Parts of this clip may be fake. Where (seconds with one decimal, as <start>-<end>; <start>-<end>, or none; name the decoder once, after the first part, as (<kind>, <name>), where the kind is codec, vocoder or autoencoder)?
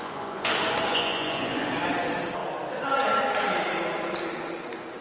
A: 0.0-0.5 (vocoder, Vocos); 0.9-1.7